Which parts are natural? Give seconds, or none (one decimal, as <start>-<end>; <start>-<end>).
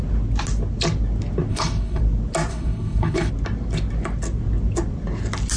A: 0.0-1.5; 2.0-2.5; 3.3-5.6